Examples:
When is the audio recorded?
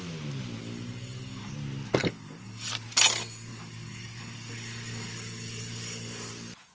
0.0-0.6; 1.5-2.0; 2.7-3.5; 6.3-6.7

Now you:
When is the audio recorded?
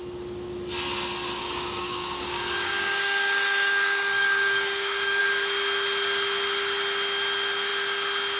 0.0-1.4; 5.2-8.4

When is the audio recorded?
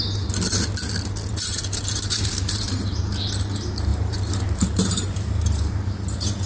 0.0-1.3; 3.0-3.9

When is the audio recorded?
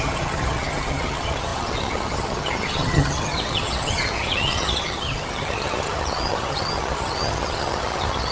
none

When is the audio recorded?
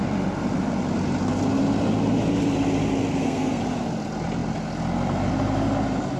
0.0-3.1; 3.6-6.2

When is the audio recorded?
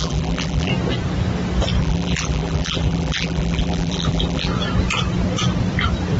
0.7-1.8; 4.5-6.2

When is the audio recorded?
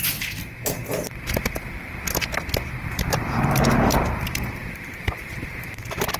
0.8-2.8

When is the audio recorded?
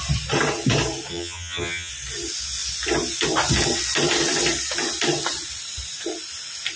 0.0-1.1; 1.9-6.8